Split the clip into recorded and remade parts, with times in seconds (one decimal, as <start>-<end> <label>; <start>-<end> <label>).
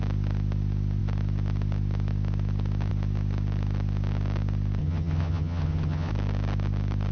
0.0-4.8 recorded; 4.8-6.1 remade; 6.1-7.1 recorded